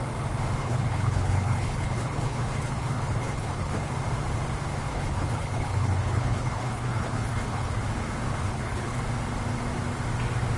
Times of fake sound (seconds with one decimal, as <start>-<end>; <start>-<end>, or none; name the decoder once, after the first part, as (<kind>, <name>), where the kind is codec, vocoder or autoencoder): 0.6-3.9 (codec, HILCodec); 4.9-7.8; 8.4-9.0